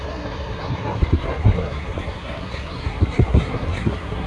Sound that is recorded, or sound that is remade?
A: remade